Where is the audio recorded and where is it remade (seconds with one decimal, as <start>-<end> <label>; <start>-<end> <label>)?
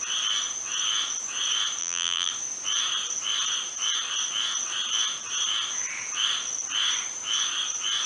0.0-1.8 recorded; 1.8-2.3 remade; 2.3-8.1 recorded